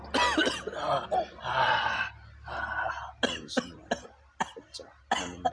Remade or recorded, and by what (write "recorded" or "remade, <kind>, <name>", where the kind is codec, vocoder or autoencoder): recorded